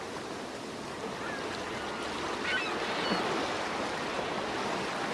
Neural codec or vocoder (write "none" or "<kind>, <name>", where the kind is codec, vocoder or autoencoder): none